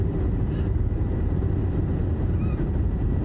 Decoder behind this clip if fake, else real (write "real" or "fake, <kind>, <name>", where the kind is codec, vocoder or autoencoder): fake, vocoder, BigVGAN v2